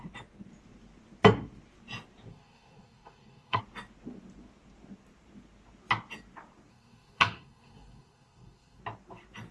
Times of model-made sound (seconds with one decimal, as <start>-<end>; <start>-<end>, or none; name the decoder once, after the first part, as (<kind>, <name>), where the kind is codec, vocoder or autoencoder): 2.3-3.6 (codec, SNAC); 6.7-8.8